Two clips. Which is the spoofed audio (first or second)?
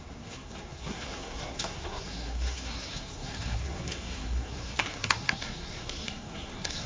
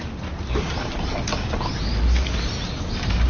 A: first